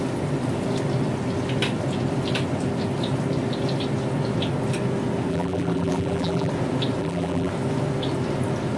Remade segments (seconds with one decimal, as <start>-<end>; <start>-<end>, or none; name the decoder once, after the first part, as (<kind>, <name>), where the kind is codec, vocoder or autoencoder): 5.3-6.5 (vocoder, BigVGAN v2); 7.0-7.5